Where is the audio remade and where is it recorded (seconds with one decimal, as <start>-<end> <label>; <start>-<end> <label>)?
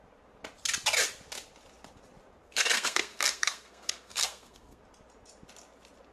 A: 0.0-2.4 recorded; 2.4-4.8 remade; 4.8-6.1 recorded